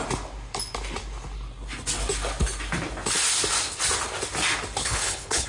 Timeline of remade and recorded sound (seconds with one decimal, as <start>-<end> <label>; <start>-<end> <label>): 0.0-4.8 recorded; 4.8-5.5 remade